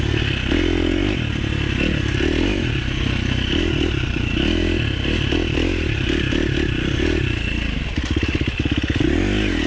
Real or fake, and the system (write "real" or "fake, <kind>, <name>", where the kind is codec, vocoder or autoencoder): real